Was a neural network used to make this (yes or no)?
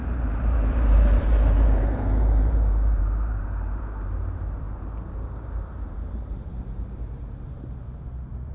yes